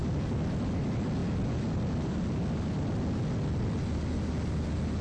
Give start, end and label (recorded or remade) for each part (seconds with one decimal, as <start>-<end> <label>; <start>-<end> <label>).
0.0-5.0 recorded